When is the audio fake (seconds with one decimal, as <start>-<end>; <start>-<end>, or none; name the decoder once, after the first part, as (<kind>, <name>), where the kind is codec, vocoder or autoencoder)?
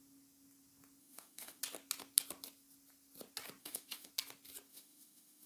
1.0-1.6 (autoencoder, DAC-VAE); 3.6-4.1; 4.7-5.5